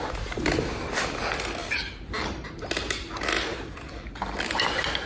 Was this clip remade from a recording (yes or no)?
no